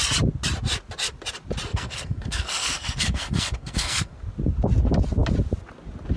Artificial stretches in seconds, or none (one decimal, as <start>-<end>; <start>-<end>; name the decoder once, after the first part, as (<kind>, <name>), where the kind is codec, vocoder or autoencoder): 1.7-4.2 (codec, SNAC)